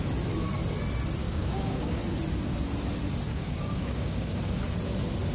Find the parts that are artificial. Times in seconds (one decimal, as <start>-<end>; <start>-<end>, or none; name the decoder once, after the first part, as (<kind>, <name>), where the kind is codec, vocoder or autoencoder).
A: 1.2-2.0 (codec, DAC); 3.3-4.6